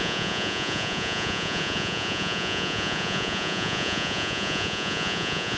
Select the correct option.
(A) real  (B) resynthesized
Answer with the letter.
B